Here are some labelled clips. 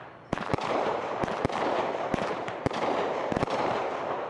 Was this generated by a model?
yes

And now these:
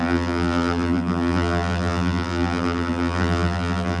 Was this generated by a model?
yes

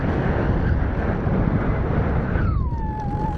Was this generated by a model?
no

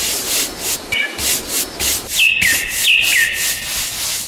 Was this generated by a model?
no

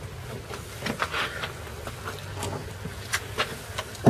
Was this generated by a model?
no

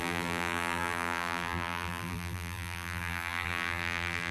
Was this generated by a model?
yes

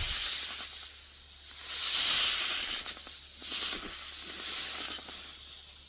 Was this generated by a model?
no